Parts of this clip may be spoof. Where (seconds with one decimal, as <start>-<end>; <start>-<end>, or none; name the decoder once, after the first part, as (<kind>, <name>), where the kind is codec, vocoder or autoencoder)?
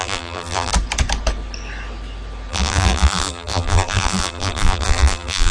0.0-0.7 (vocoder, BigVGAN v2); 2.5-5.5